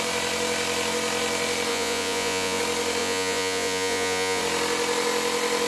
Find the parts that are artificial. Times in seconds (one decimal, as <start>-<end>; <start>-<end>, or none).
1.7-2.6; 3.0-4.4